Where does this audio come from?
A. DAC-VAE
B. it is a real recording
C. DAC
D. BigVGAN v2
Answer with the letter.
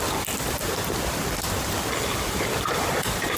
B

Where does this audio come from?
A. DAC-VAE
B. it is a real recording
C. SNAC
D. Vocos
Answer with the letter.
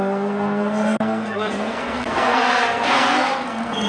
C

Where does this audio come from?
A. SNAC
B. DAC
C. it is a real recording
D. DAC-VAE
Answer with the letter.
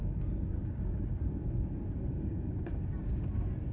B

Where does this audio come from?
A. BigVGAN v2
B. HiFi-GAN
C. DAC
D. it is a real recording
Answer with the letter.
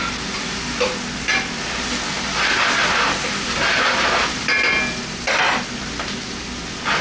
D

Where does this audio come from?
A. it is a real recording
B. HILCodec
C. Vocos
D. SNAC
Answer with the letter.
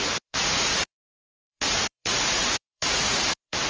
C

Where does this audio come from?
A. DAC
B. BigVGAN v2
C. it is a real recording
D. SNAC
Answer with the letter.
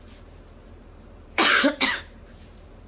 B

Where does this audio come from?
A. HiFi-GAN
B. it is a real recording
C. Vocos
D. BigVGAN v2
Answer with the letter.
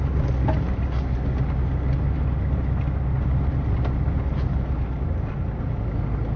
B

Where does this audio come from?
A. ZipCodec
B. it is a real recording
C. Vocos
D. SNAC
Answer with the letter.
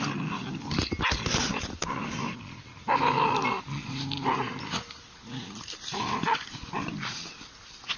B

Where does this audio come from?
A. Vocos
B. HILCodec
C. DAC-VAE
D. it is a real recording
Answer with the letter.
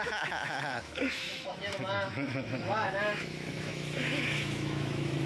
C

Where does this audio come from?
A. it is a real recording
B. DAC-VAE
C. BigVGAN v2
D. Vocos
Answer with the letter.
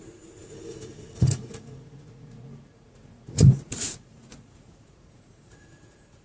D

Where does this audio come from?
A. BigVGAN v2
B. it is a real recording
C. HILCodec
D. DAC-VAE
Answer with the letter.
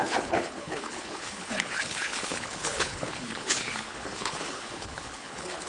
C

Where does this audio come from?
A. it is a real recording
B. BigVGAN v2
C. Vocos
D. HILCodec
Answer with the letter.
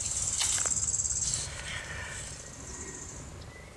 A